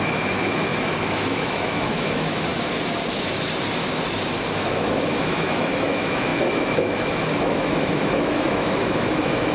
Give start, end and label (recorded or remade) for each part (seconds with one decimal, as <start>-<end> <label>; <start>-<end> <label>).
0.0-2.5 remade; 2.5-4.5 recorded; 4.5-9.5 remade